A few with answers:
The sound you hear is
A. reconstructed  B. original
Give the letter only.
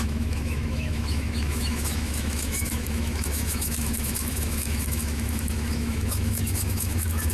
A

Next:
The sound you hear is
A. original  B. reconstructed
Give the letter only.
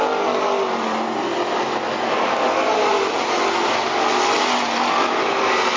A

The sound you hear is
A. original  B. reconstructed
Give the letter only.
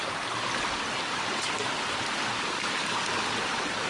A